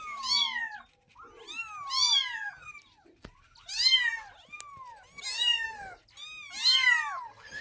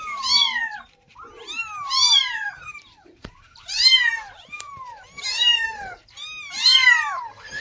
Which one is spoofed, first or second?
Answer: second